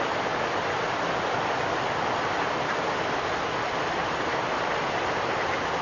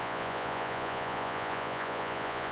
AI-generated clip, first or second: second